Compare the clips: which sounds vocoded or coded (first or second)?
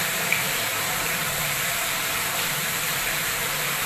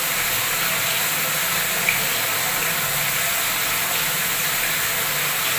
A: first